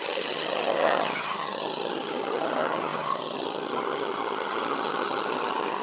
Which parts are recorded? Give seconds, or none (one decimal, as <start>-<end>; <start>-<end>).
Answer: none